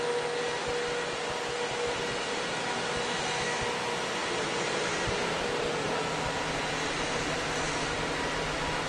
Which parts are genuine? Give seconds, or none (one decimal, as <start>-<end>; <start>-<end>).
0.0-8.9